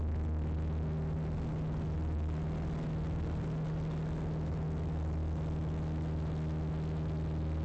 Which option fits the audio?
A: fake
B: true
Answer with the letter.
B